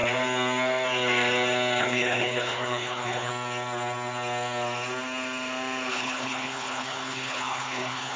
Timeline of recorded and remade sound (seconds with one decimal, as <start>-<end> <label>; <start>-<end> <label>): 0.0-1.8 recorded; 1.8-3.3 remade; 3.3-5.9 recorded; 5.9-8.2 remade